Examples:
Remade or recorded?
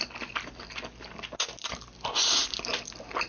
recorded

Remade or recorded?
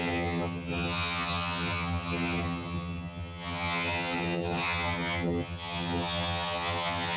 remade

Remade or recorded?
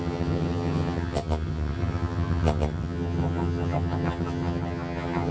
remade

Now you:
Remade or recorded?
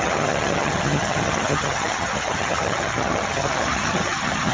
remade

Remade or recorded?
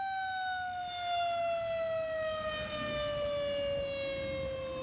recorded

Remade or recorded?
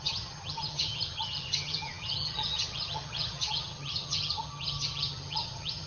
remade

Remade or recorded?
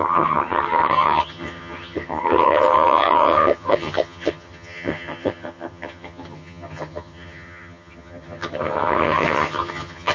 remade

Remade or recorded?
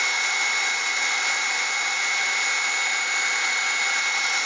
recorded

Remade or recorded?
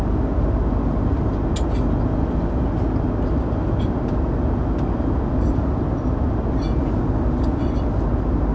recorded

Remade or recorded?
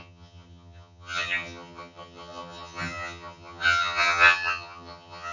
remade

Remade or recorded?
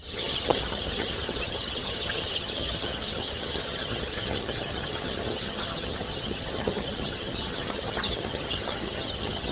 remade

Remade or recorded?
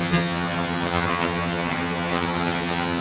remade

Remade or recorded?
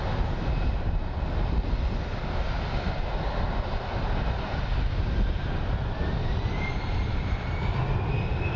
recorded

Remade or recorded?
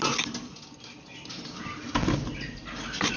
recorded